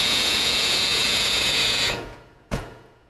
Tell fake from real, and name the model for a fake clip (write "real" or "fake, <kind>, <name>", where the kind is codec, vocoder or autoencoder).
fake, vocoder, Vocos